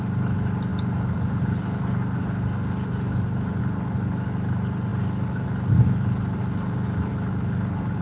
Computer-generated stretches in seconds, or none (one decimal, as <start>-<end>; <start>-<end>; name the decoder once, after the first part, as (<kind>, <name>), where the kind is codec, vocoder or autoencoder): none